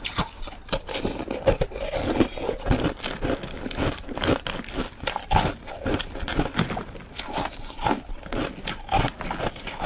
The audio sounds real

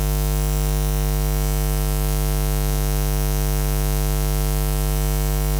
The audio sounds fake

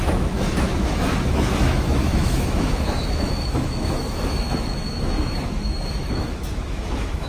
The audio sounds fake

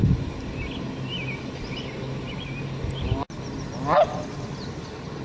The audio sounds real